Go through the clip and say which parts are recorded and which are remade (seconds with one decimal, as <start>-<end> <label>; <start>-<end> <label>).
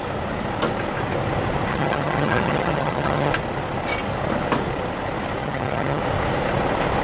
0.0-1.7 recorded; 1.7-3.3 remade; 3.3-5.4 recorded; 5.4-6.0 remade; 6.0-7.0 recorded